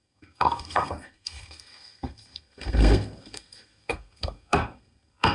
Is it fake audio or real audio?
fake